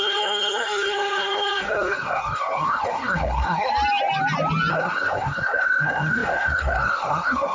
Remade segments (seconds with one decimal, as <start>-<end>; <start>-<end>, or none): 0.0-3.7; 4.7-7.5